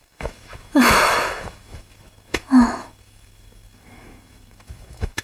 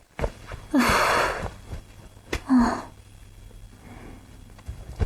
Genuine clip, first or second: second